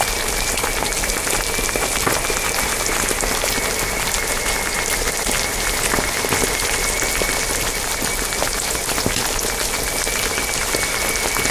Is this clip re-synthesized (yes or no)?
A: no